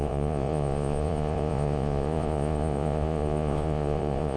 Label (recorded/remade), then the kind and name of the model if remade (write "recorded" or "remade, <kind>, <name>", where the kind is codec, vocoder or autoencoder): remade, vocoder, Vocos